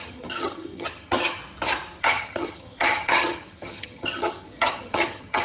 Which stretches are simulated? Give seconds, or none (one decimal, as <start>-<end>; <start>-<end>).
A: 0.0-1.4; 2.0-5.4